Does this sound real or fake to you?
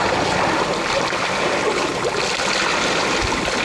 real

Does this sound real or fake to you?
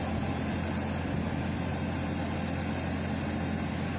real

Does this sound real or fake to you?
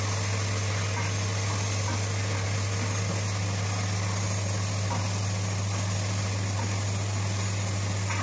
real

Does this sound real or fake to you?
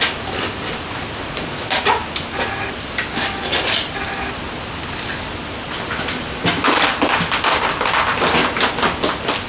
real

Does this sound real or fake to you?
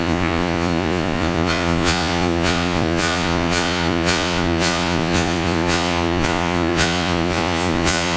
fake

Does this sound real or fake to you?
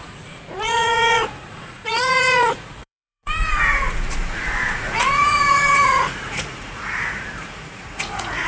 fake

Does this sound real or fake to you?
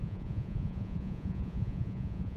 fake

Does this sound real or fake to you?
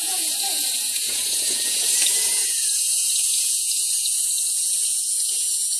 fake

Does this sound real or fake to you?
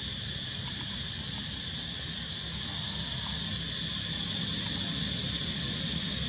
real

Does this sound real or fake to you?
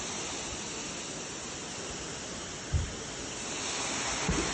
real